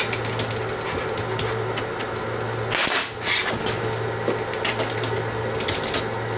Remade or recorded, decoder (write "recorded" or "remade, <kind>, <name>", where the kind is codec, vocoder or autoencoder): recorded